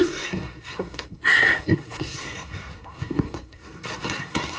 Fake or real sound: fake